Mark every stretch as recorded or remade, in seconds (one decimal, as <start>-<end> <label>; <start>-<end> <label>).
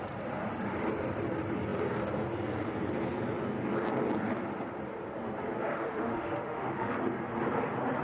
0.0-5.8 recorded; 5.8-6.9 remade; 6.9-8.0 recorded